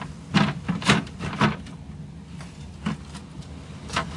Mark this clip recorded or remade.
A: recorded